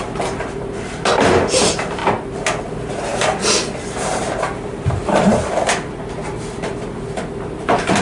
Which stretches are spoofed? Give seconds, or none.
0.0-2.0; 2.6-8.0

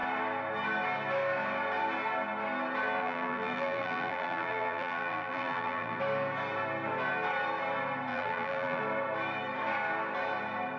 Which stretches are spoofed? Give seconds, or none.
3.0-6.0; 8.1-8.8